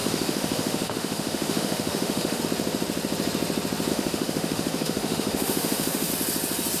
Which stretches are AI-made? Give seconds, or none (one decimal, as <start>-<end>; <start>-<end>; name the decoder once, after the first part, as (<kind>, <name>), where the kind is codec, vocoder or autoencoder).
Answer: 0.0-2.4 (autoencoder, DAC-VAE); 3.9-6.1